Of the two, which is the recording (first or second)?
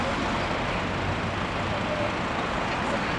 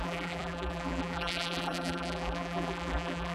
first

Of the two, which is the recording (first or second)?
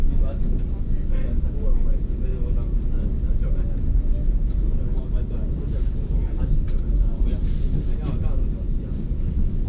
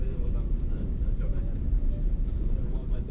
first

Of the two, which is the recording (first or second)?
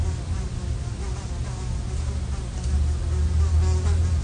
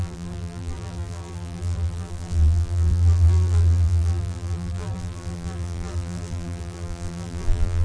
first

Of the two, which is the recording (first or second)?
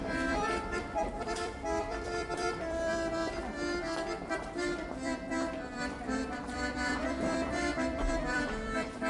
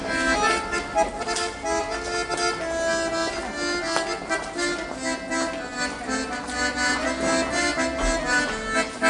second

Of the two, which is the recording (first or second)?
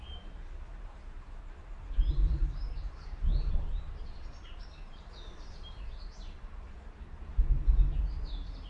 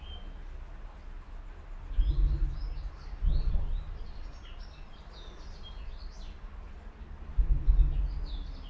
second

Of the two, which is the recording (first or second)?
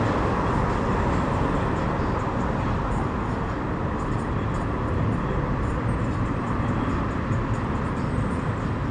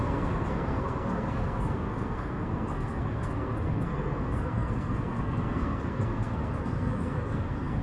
first